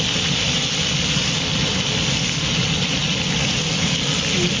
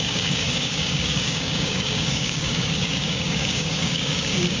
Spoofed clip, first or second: second